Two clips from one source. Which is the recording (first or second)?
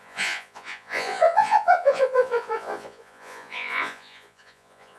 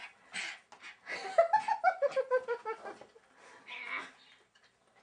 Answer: second